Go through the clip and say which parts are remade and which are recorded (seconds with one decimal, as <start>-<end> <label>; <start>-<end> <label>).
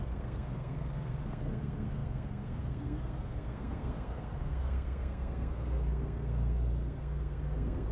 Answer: 0.0-7.9 remade